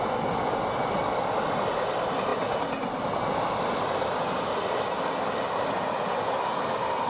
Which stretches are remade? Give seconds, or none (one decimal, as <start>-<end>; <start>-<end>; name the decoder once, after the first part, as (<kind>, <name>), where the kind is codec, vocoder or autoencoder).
none